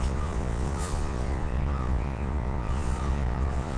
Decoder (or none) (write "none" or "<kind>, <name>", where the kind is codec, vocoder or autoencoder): vocoder, Vocos